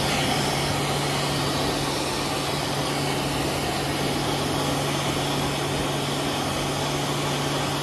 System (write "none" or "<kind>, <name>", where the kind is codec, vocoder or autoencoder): none